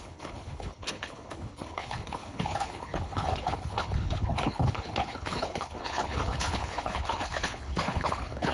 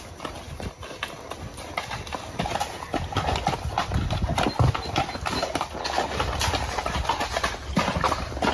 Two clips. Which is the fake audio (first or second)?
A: first